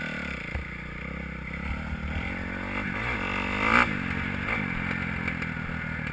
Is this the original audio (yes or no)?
yes